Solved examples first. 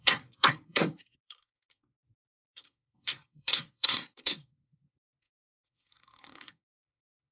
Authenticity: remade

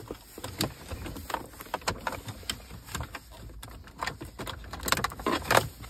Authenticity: recorded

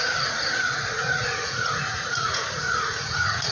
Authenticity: remade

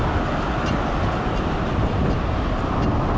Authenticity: recorded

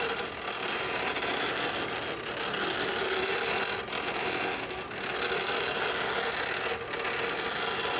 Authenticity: recorded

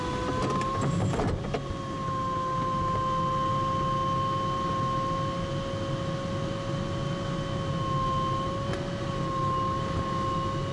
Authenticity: recorded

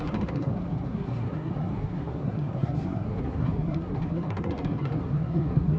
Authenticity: remade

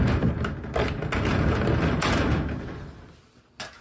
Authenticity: recorded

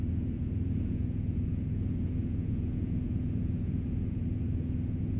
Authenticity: remade